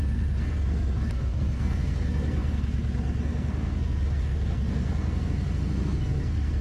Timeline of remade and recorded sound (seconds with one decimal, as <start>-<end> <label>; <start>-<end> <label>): 0.0-6.6 remade